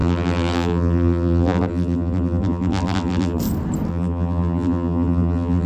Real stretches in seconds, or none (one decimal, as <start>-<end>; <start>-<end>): 3.4-3.9